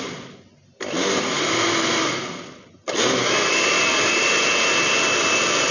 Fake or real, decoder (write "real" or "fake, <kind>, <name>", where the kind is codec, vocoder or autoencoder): real